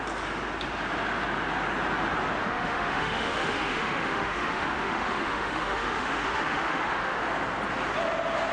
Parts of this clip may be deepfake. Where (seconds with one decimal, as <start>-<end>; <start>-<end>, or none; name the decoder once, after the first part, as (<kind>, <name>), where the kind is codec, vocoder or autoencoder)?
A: 2.4-7.2 (autoencoder, DAC-VAE)